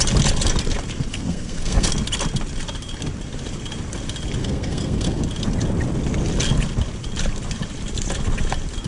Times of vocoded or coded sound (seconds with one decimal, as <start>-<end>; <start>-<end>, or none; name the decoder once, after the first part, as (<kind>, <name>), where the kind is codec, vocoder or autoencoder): 1.1-1.9 (codec, SNAC); 4.4-5.2